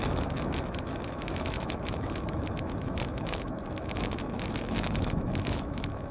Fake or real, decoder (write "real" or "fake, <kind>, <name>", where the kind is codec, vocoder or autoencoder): fake, autoencoder, DAC-VAE